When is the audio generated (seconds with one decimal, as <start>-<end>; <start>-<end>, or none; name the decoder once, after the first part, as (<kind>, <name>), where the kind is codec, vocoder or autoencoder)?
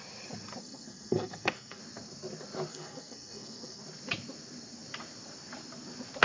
0.6-1.8 (codec, SNAC); 2.7-3.8